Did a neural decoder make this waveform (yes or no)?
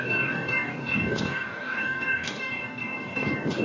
yes